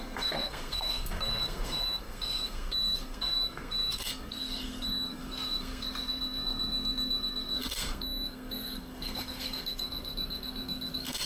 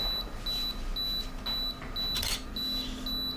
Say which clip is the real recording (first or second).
second